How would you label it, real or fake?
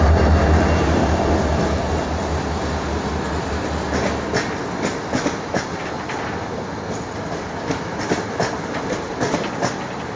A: real